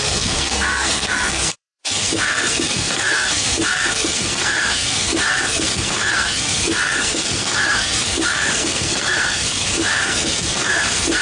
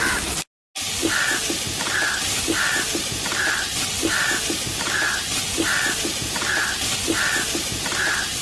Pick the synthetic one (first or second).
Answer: first